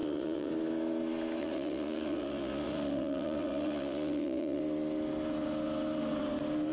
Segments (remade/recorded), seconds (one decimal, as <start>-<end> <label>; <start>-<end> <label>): 0.0-0.5 remade; 0.5-1.4 recorded; 1.4-4.6 remade; 4.6-6.7 recorded

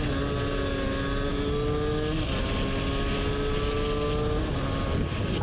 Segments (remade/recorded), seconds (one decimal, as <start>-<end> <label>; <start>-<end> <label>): 0.0-5.4 recorded